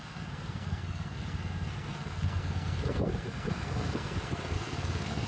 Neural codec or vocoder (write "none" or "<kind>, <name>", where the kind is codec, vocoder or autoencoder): codec, SNAC